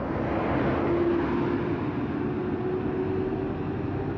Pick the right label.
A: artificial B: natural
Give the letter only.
B